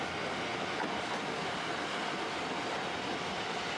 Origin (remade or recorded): recorded